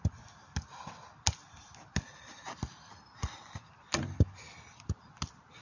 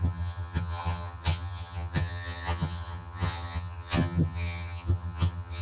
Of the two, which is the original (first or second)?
first